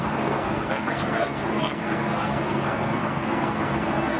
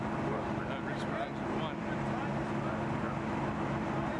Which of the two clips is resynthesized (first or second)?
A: first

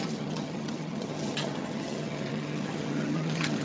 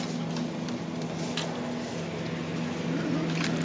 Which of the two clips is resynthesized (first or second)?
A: first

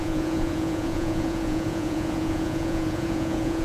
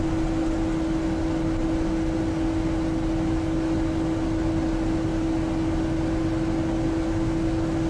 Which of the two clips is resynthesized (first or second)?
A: first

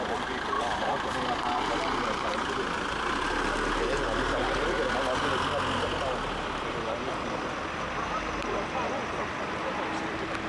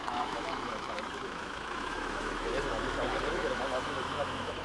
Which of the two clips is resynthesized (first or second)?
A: second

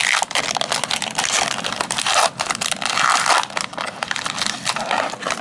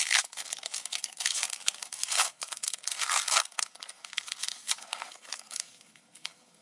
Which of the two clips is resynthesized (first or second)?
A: second